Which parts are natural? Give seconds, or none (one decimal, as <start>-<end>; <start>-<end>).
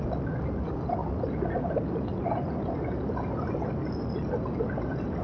0.0-5.2